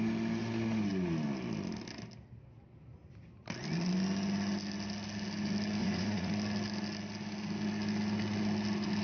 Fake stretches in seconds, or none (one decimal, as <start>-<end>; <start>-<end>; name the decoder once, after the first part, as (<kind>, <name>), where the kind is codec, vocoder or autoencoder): 5.8-6.3 (vocoder, Vocos)